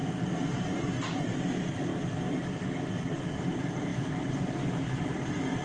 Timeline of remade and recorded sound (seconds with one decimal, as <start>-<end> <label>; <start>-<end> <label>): 0.0-1.9 remade; 1.9-3.4 recorded; 3.4-5.6 remade